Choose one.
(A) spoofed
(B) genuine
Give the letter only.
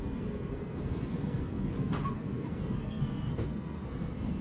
A